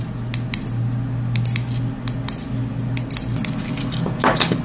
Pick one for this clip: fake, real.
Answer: real